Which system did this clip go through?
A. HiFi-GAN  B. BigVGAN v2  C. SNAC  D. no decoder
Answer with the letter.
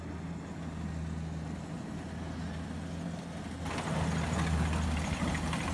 D